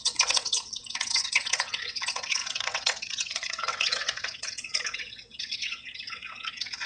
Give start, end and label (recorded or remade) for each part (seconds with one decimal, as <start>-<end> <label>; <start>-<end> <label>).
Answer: 0.0-6.9 remade